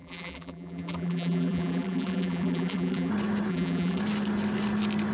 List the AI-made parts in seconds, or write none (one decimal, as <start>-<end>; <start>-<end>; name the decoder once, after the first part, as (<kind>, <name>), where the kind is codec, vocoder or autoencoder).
0.0-3.1 (vocoder, BigVGAN v2); 3.5-4.0